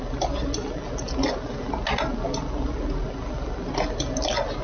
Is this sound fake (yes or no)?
no